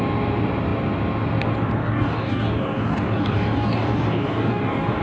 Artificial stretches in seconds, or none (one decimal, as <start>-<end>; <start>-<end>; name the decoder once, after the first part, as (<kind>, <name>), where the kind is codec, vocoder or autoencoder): 1.8-5.0 (codec, DAC)